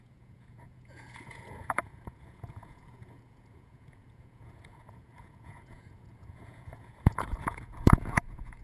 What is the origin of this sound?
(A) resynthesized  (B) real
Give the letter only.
A